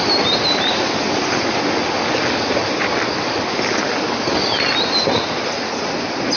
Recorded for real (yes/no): yes